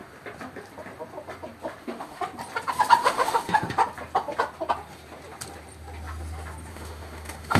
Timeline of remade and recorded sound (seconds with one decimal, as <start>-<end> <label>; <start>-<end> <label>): 0.0-1.8 recorded; 1.8-2.2 remade; 2.2-3.0 recorded; 3.0-3.8 remade; 3.8-6.7 recorded; 6.7-7.6 remade